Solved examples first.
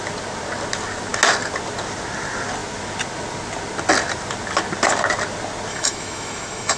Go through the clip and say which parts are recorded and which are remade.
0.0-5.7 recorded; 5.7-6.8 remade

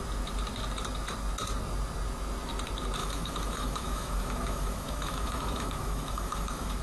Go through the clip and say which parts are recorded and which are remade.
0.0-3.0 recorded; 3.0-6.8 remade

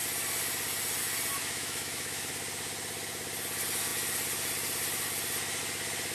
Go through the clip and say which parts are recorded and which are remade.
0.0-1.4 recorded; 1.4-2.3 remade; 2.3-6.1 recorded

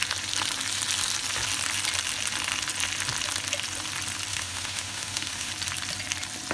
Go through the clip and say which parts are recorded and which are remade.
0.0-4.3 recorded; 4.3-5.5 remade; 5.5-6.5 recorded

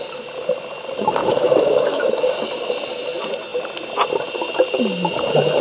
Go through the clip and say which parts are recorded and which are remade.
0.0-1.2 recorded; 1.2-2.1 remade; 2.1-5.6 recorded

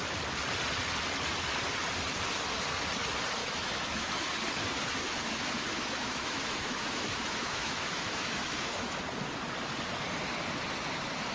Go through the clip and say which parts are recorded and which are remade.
0.0-3.4 recorded; 3.4-4.1 remade; 4.1-5.0 recorded; 5.0-9.0 remade; 9.0-11.3 recorded

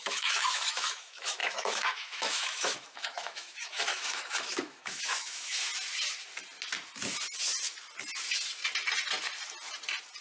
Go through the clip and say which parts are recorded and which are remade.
0.0-5.7 remade; 5.7-10.2 recorded